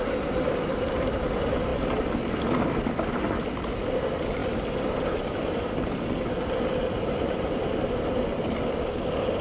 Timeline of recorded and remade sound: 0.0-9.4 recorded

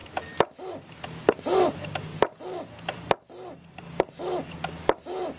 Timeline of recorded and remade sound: 0.0-5.4 recorded

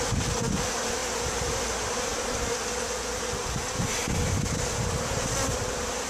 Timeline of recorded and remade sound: 0.0-2.1 recorded; 2.1-3.5 remade; 3.5-6.1 recorded

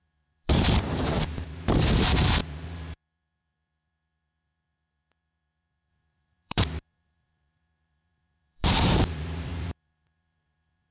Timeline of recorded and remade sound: 0.0-2.4 remade; 2.4-5.9 recorded; 5.9-10.9 remade

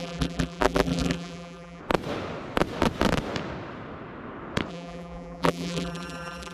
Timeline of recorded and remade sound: 0.0-1.8 remade; 1.8-4.7 recorded; 4.7-6.5 remade

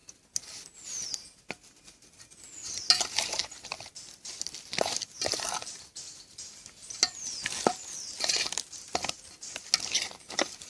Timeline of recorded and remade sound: 0.0-3.4 recorded; 3.4-3.9 remade; 3.9-10.7 recorded

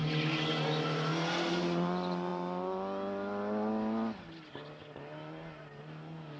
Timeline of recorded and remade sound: 0.0-6.4 recorded

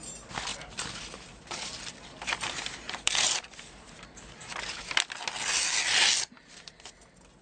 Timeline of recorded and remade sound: 0.0-0.5 recorded; 0.5-4.9 remade; 4.9-7.4 recorded